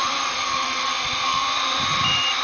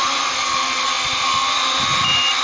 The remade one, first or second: first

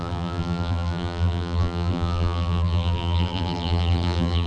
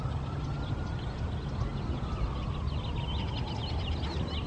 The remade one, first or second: first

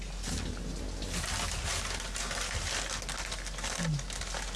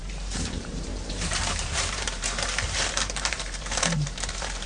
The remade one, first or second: second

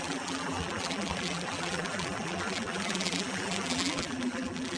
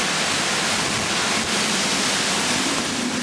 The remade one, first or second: first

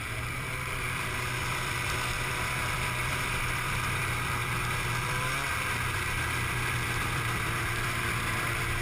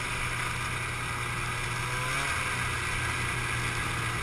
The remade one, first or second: first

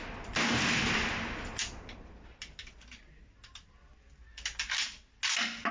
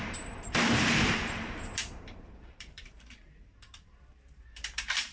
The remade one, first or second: second